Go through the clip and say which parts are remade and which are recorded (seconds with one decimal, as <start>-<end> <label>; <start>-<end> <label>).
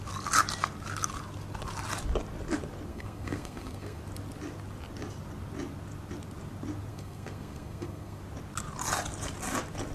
0.0-2.9 recorded; 2.9-4.0 remade; 4.0-6.9 recorded; 6.9-8.2 remade; 8.2-9.9 recorded